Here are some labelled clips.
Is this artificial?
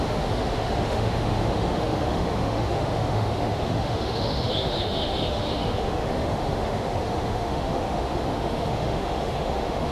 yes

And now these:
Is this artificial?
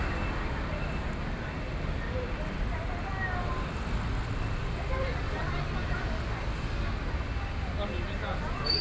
no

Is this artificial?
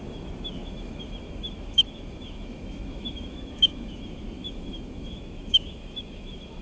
yes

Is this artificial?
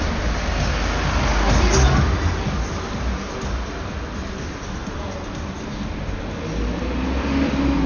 no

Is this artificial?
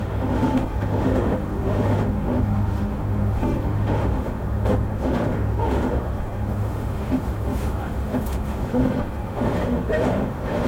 yes